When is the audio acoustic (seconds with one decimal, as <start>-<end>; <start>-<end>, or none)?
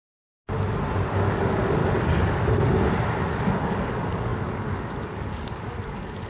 0.0-1.1; 1.8-3.2